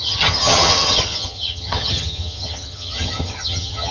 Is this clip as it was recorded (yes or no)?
no